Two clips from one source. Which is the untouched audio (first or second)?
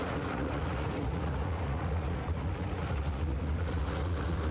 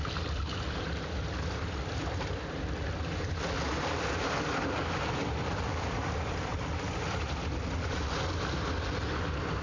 second